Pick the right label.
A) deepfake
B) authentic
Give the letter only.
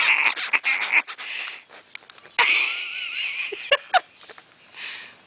B